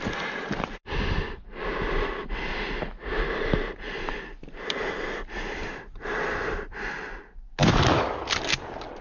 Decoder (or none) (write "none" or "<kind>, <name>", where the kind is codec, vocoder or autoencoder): none